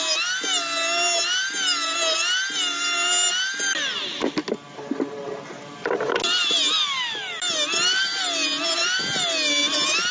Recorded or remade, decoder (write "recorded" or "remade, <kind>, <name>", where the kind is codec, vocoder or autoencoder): recorded